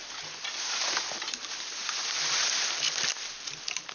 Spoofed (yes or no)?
no